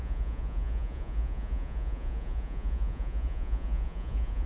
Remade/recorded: remade